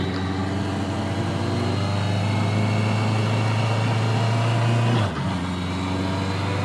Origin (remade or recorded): recorded